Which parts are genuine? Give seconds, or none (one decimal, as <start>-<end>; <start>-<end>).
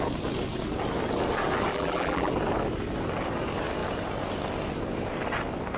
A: 0.0-1.7; 2.3-5.8